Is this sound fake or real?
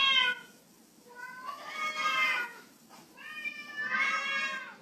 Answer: real